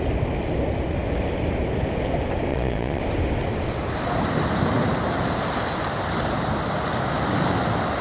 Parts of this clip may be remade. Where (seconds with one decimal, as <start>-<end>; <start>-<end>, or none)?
2.5-3.0